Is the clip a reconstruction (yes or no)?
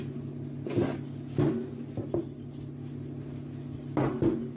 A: no